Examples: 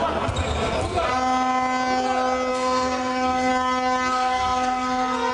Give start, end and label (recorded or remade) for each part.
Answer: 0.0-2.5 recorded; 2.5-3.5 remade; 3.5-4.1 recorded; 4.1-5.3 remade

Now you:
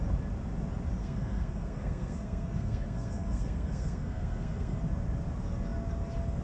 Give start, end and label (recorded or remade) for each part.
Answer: 0.0-1.0 recorded; 1.0-4.8 remade; 4.8-6.4 recorded

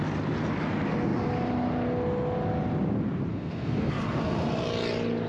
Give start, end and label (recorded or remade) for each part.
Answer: 0.0-3.3 recorded; 3.3-3.9 remade; 3.9-5.3 recorded

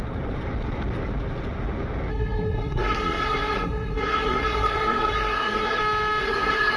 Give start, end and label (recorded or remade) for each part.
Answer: 0.0-2.1 recorded; 2.1-5.8 remade; 5.8-6.2 recorded; 6.2-6.8 remade

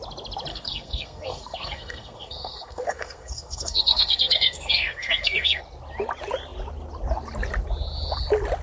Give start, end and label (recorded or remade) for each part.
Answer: 0.0-0.5 recorded; 0.5-5.6 remade; 5.6-8.6 recorded